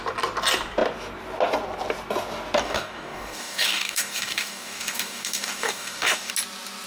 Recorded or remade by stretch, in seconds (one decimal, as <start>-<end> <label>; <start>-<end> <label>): 0.0-2.6 recorded; 2.6-6.3 remade; 6.3-6.9 recorded